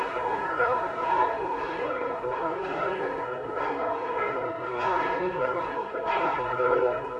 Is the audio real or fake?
fake